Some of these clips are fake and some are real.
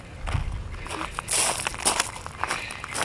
real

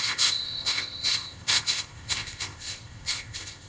fake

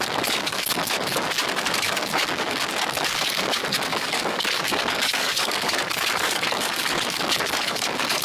fake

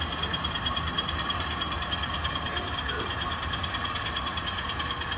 fake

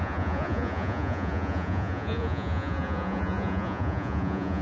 fake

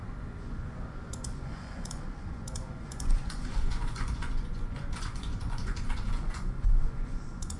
fake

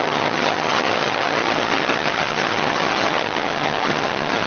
fake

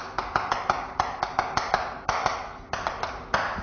real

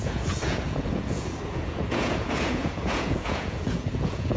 fake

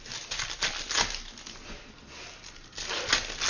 real